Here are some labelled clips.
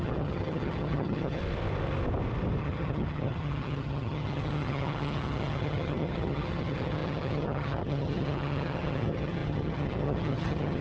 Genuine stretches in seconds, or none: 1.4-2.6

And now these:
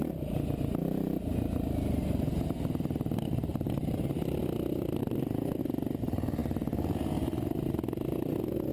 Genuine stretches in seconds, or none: 0.0-3.5; 4.4-5.0; 5.6-8.7

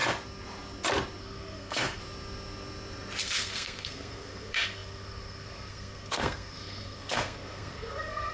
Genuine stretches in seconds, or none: 0.0-1.2; 2.0-3.2

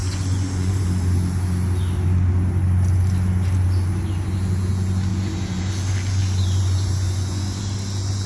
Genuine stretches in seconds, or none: 0.8-5.1; 5.6-6.2; 7.6-8.3